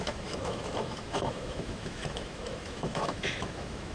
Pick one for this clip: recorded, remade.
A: remade